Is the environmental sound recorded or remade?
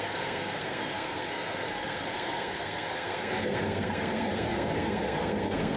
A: remade